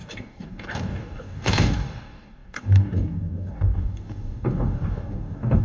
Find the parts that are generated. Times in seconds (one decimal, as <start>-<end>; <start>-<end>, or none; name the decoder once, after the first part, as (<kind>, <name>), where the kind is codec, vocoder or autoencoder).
0.0-5.6 (codec, DAC)